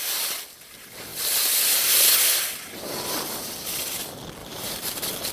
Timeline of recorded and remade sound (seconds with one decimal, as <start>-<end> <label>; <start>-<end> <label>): 0.0-4.4 recorded; 4.4-5.3 remade